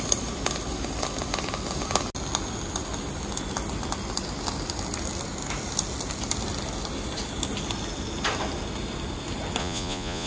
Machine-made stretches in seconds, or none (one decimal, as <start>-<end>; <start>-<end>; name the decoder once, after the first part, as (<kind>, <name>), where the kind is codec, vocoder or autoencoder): 9.6-10.3 (vocoder, Vocos)